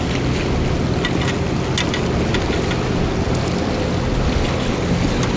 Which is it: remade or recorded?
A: recorded